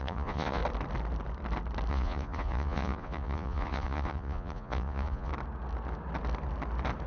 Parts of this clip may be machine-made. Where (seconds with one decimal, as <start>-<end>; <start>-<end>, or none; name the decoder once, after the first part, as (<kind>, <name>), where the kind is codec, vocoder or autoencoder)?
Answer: 0.0-0.6 (vocoder, Vocos); 1.9-5.3